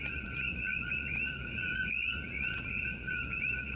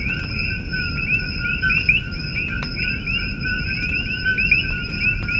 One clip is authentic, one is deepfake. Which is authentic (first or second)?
second